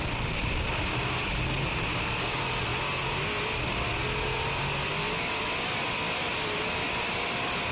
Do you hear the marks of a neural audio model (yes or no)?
no